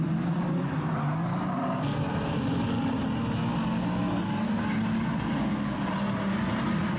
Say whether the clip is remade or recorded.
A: recorded